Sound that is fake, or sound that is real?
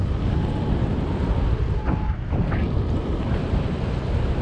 real